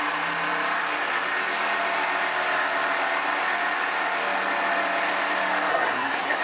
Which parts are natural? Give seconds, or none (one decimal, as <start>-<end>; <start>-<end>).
0.0-5.7